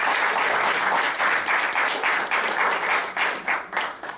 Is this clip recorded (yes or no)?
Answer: yes